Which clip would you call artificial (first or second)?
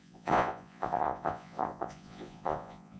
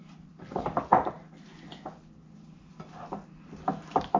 first